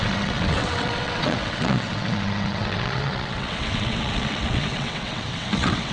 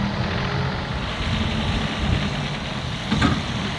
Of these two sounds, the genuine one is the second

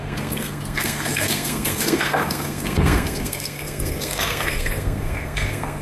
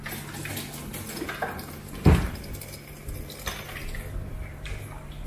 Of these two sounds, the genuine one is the second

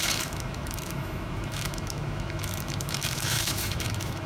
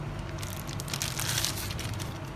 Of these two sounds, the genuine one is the second